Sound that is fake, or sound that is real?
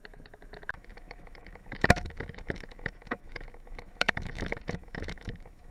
fake